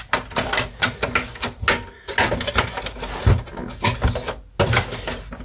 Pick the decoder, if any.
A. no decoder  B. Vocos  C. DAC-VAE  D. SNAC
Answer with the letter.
A